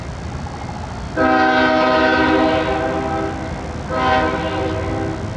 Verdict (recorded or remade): recorded